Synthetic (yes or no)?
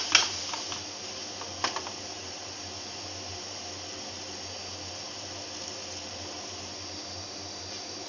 no